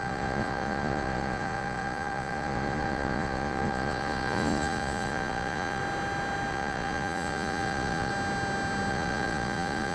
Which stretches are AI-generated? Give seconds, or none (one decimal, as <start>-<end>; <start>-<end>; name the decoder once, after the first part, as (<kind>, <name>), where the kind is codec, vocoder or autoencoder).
0.0-5.8 (vocoder, Vocos); 6.5-8.1; 8.9-9.9